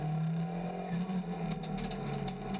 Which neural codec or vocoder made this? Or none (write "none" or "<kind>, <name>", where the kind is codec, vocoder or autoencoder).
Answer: none